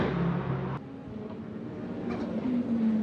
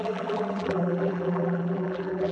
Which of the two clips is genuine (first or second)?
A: first